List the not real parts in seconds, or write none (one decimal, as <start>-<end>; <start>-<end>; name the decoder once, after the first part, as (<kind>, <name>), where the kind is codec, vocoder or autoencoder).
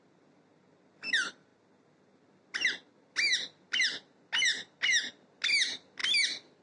none